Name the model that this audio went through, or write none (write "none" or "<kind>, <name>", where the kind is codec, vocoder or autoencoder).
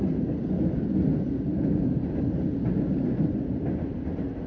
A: none